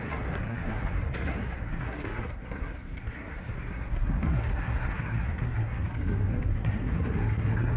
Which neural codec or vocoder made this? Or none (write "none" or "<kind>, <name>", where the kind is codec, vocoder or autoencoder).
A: codec, SNAC